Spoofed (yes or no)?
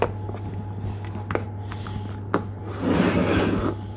no